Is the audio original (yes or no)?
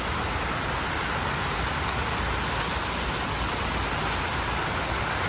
yes